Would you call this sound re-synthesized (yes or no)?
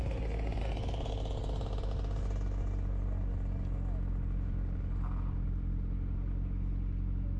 no